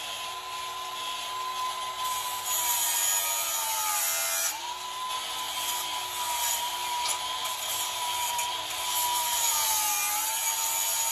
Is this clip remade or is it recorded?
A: recorded